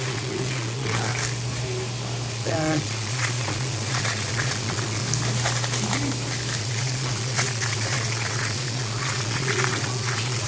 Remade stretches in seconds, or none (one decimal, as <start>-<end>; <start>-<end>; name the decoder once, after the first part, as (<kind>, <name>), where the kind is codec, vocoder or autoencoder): 0.0-1.1 (vocoder, Vocos); 2.3-5.0; 6.6-10.5